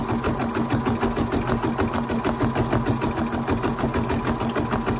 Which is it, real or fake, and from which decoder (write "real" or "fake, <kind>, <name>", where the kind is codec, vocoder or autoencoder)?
real